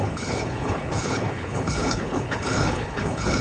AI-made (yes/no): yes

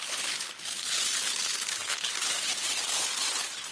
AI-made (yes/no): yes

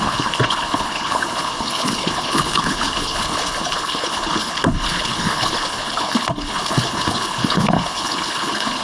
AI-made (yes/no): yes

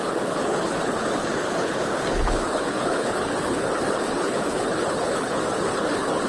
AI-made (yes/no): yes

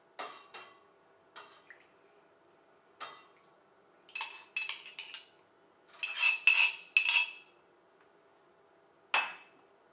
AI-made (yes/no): no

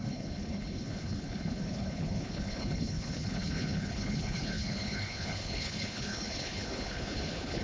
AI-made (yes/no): yes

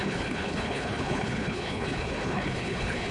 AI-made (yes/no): yes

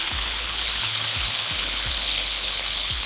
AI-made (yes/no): yes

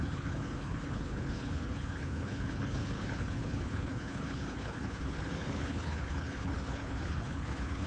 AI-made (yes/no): yes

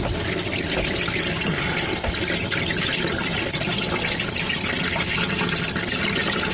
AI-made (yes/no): no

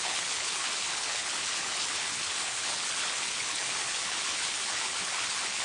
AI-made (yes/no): yes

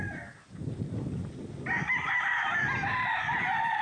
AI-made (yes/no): no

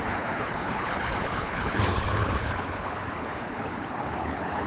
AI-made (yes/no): yes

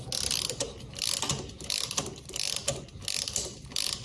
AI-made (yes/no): no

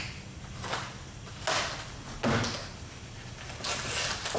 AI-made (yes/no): no